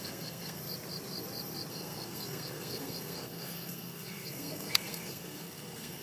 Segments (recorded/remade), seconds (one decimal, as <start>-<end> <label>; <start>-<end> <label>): 0.0-0.6 remade; 0.6-1.7 recorded; 1.7-6.0 remade